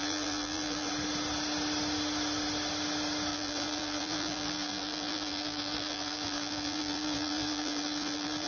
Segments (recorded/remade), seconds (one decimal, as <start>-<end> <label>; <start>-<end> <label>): 0.0-0.9 remade; 0.9-3.3 recorded; 3.3-8.5 remade